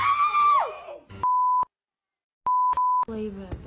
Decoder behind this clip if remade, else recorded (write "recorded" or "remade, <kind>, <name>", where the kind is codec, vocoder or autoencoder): recorded